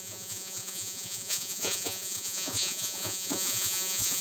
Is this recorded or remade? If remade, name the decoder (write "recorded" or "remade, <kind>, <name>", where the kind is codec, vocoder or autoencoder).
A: remade, vocoder, Vocos